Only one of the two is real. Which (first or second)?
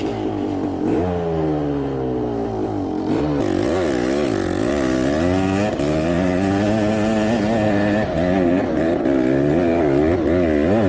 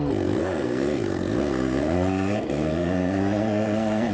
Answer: first